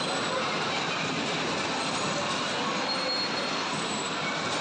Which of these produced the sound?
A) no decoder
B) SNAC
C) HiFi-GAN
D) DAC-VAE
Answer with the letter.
A